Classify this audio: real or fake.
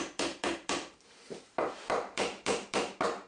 fake